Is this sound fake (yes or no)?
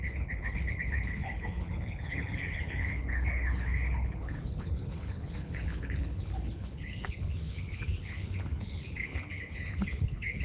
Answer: yes